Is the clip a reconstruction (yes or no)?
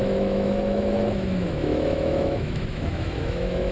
yes